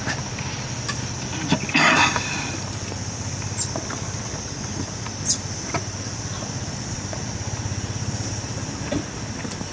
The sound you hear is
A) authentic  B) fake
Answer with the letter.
B